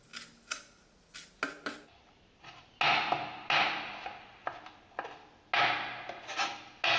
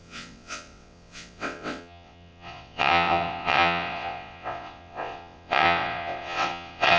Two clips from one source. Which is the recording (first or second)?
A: first